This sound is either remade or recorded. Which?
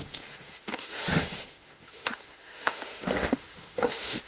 remade